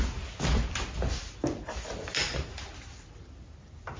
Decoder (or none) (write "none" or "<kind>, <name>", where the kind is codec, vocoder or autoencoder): none